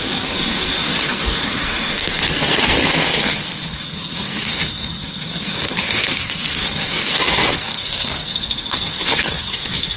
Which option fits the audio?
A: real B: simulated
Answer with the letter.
B